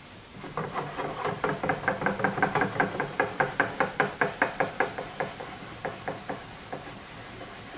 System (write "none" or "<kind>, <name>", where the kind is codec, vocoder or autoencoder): none